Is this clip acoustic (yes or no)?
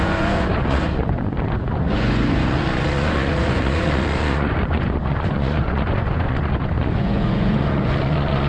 no